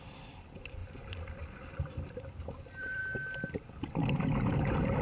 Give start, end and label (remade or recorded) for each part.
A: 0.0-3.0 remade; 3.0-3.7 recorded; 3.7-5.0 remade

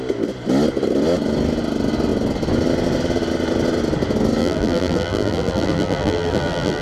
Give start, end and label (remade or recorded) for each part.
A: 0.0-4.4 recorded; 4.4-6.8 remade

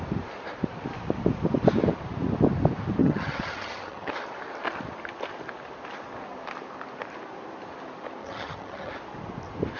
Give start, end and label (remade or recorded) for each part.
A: 0.0-3.0 recorded; 3.0-4.1 remade; 4.1-8.2 recorded; 8.2-8.9 remade; 8.9-9.8 recorded